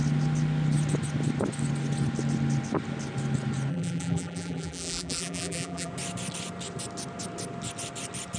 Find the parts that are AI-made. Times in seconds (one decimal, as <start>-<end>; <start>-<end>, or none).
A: 3.7-5.9